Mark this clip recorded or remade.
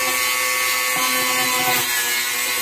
recorded